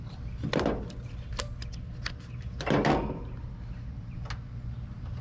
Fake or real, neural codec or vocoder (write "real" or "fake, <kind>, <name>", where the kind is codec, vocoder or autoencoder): real